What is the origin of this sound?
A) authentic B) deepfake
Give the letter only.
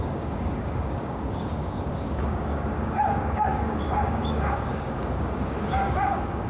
B